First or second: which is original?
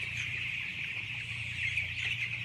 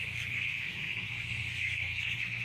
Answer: first